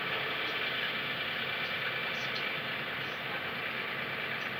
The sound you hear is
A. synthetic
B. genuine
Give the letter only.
B